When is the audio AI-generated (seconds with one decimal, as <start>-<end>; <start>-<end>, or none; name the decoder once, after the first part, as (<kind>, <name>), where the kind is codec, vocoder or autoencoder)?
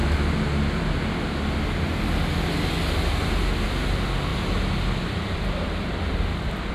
none